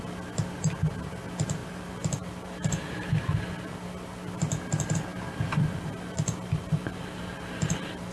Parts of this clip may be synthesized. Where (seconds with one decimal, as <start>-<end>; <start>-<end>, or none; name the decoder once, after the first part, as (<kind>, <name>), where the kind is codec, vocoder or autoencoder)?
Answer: none

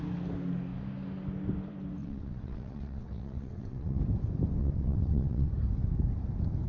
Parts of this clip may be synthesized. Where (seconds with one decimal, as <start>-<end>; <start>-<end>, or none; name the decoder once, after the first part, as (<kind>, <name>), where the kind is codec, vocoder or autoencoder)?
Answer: 2.0-4.0 (vocoder, WaveNeXt); 4.6-5.5

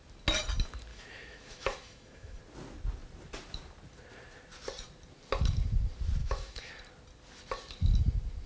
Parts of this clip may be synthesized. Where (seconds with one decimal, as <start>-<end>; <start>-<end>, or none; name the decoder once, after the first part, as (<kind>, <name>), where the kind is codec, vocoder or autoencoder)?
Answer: 0.9-2.4 (autoencoder, DAC-VAE); 6.2-6.7